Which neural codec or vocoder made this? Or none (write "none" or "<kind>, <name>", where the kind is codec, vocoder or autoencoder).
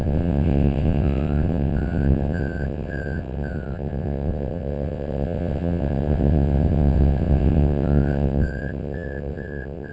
vocoder, WaveNeXt